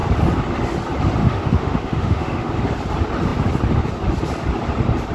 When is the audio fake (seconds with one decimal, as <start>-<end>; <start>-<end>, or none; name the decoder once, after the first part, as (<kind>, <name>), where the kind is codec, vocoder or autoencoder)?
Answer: 1.2-2.5 (autoencoder, DAC-VAE)